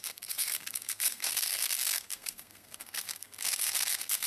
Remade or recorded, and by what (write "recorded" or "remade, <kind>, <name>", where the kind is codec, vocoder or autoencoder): remade, codec, SNAC